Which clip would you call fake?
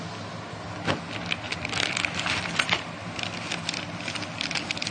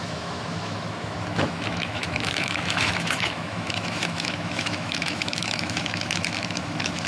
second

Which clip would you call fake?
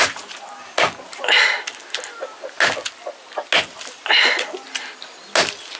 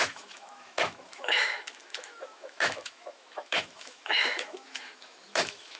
second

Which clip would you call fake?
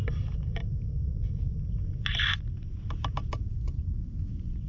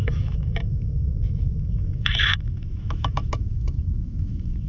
second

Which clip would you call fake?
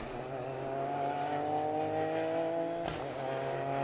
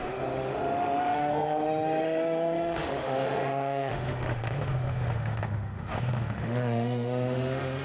second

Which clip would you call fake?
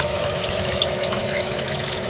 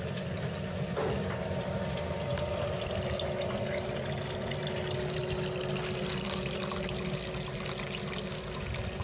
first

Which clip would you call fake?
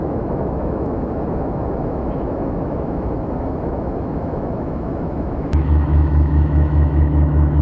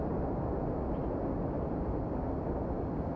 first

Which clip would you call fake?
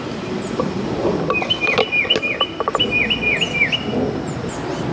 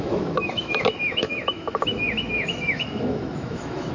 second